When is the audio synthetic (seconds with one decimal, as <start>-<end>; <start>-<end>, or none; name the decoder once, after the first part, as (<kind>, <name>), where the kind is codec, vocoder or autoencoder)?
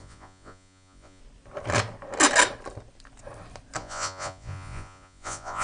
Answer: 0.0-1.2 (vocoder, Vocos); 3.8-5.6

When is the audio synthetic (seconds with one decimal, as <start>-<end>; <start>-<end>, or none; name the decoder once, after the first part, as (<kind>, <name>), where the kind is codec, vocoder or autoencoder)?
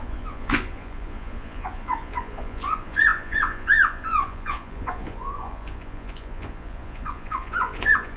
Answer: 0.0-8.2 (vocoder, Vocos)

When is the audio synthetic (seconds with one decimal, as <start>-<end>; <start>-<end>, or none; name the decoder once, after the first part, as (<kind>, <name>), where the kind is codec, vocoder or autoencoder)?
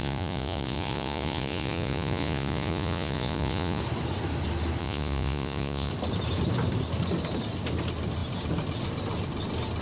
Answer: 0.0-3.8 (vocoder, Vocos); 4.8-5.9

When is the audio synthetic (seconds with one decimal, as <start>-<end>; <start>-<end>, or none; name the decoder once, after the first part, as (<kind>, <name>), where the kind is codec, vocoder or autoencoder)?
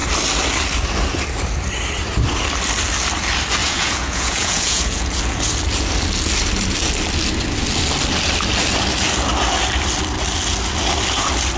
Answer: 3.6-5.2 (vocoder, Vocos)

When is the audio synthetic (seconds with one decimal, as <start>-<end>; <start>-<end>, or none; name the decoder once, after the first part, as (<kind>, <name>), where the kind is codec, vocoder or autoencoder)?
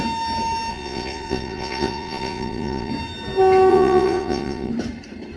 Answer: 0.7-2.9 (vocoder, Vocos); 3.7-4.7